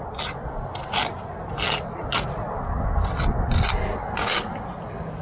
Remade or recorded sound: recorded